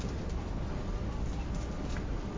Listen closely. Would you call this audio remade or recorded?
recorded